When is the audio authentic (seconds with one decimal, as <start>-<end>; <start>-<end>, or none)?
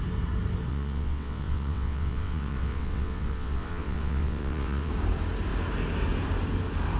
0.0-0.7; 4.9-7.0